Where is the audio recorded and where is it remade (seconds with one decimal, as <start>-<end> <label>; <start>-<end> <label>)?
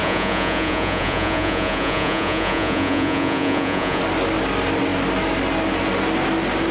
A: 0.0-4.0 remade; 4.0-6.7 recorded